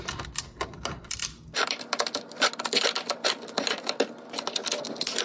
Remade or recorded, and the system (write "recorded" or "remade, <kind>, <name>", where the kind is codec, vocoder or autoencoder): recorded